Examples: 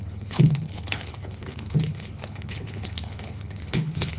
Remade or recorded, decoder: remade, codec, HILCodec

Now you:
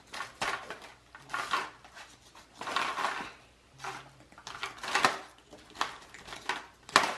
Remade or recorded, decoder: recorded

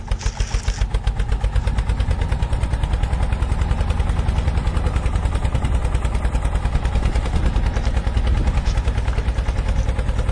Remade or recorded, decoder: recorded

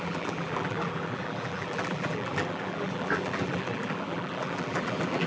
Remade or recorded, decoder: remade, vocoder, BigVGAN v2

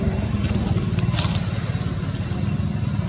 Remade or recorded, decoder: recorded